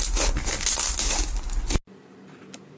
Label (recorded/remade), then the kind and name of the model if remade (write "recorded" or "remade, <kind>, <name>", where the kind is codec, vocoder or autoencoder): recorded